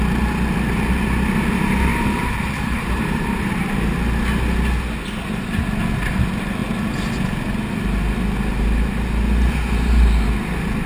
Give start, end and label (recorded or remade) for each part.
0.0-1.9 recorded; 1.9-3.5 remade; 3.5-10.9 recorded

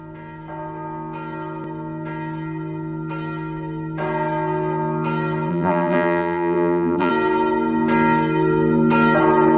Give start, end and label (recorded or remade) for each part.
0.0-5.5 recorded; 5.5-7.1 remade; 7.1-9.6 recorded

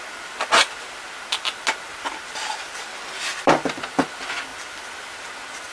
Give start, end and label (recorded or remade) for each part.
0.0-1.9 recorded; 1.9-2.5 remade; 2.5-5.7 recorded

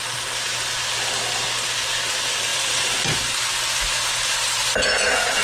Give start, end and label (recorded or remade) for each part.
0.0-2.5 recorded; 2.5-3.4 remade; 3.4-5.4 recorded

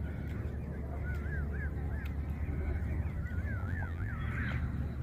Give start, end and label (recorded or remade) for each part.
0.0-3.6 recorded; 3.6-4.1 remade; 4.1-5.0 recorded